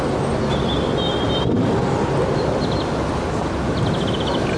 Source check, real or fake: real